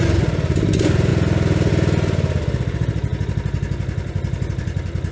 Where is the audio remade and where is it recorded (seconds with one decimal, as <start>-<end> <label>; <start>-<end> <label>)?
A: 0.0-5.1 recorded